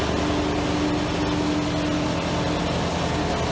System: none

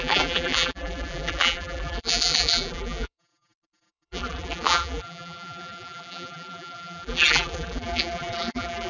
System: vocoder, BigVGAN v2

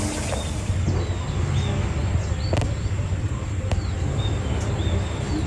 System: none